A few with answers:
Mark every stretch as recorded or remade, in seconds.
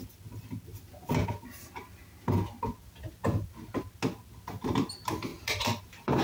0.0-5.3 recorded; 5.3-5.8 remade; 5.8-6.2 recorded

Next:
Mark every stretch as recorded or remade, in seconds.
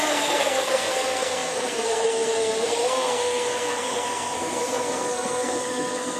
0.0-6.2 remade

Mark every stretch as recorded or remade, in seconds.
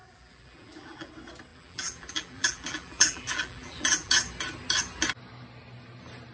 0.0-1.1 remade; 1.1-1.5 recorded; 1.5-4.1 remade; 4.1-6.3 recorded